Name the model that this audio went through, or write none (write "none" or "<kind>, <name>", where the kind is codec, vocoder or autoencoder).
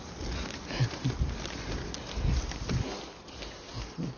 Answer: none